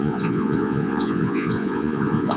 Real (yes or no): no